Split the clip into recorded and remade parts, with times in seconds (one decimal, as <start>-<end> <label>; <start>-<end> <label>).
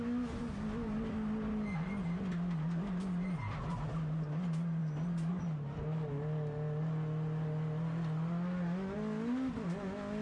0.0-10.2 recorded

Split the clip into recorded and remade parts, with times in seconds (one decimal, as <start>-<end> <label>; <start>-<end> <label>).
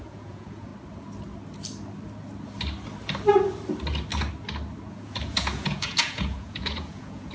0.0-0.7 remade; 0.7-4.9 recorded; 4.9-7.3 remade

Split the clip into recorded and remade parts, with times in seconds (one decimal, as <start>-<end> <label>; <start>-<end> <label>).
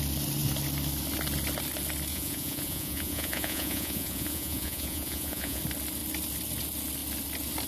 0.0-2.1 recorded; 2.1-5.6 remade; 5.6-7.7 recorded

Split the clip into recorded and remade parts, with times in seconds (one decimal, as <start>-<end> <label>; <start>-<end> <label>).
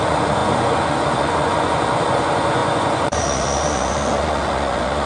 0.0-5.1 remade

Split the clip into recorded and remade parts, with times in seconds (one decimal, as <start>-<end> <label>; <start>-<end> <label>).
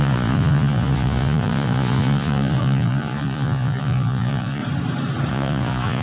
0.0-4.6 remade; 4.6-5.3 recorded; 5.3-6.0 remade